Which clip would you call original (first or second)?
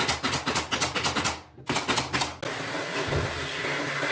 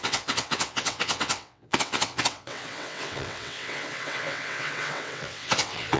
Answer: first